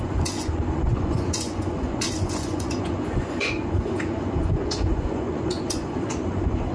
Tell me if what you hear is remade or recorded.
remade